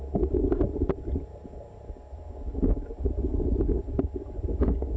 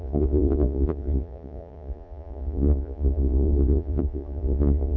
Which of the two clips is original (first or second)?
first